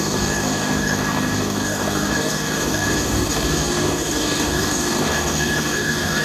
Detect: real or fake fake